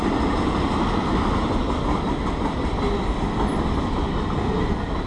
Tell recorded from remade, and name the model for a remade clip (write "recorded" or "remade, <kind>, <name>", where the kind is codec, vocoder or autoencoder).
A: recorded